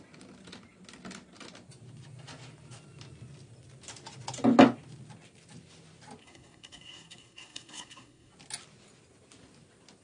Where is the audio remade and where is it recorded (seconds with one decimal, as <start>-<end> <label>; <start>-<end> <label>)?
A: 0.0-6.2 recorded; 6.2-8.3 remade; 8.3-10.0 recorded